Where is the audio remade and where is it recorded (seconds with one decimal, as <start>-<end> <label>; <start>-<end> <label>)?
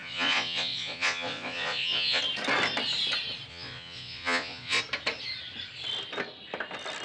0.0-2.2 remade; 2.2-3.5 recorded; 3.5-4.8 remade; 4.8-7.0 recorded